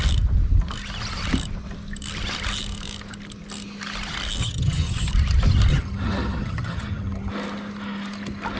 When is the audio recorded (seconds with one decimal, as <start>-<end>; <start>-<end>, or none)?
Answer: 0.0-4.4; 5.1-5.7; 7.3-8.6